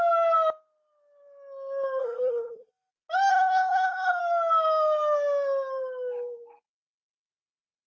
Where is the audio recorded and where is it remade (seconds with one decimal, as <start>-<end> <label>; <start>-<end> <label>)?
0.0-2.0 recorded; 2.0-2.9 remade; 2.9-3.3 recorded; 3.3-4.2 remade; 4.2-7.9 recorded